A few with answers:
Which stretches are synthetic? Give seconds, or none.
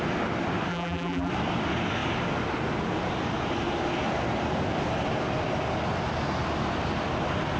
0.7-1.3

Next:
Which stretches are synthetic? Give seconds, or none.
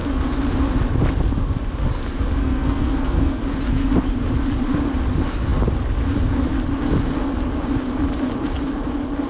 2.4-3.4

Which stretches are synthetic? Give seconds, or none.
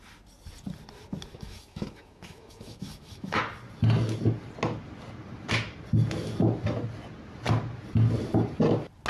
1.3-3.4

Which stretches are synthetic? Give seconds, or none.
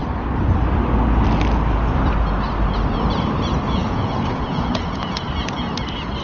3.8-5.3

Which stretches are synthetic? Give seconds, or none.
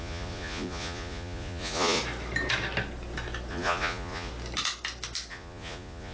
0.0-2.0; 3.5-4.3; 5.3-6.1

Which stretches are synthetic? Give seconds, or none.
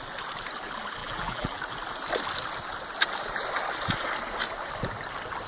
1.0-1.6